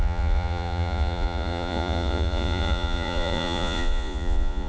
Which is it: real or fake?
fake